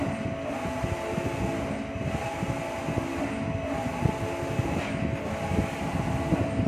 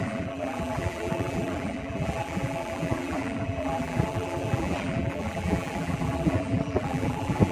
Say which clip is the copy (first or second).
second